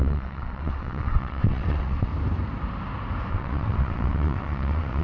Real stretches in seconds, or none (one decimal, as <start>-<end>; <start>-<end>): 2.1-3.3